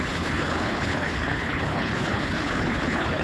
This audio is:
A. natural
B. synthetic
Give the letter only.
B